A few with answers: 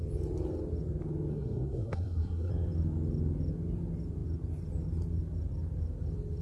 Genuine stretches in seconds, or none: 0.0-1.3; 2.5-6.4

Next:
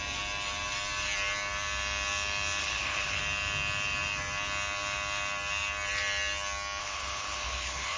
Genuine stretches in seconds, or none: 0.0-2.6; 3.2-6.8

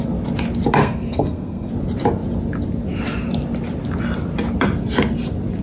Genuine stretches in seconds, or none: 0.0-0.8; 1.7-5.6

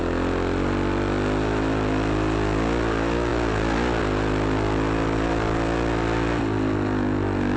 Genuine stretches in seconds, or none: 0.0-7.6

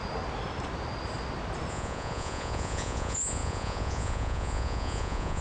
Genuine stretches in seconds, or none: 0.0-1.7

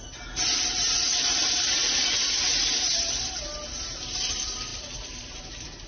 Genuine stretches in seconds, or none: 0.0-4.7; 5.4-5.9

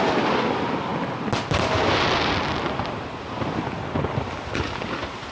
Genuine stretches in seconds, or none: 0.0-5.3

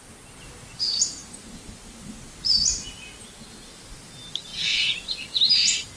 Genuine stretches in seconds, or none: 0.0-1.2; 3.3-6.0